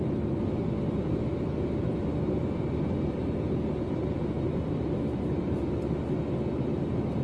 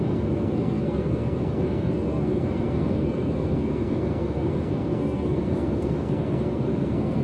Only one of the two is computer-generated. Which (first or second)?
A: second